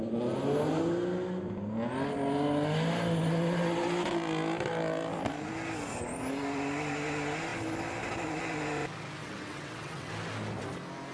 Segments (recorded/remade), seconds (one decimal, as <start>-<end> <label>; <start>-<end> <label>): 0.0-9.2 recorded; 9.2-10.1 remade; 10.1-11.1 recorded